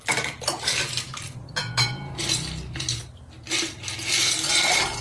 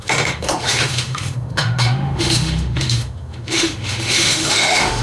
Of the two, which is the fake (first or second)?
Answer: second